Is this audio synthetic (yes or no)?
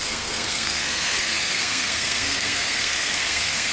yes